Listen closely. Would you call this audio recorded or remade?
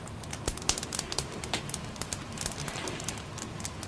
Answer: recorded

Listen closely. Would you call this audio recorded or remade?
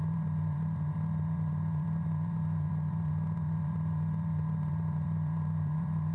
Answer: remade